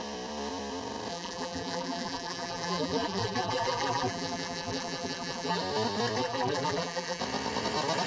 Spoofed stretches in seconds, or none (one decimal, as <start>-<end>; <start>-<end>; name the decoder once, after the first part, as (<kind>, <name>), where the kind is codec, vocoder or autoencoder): 1.1-5.6 (vocoder, BigVGAN v2); 6.2-7.2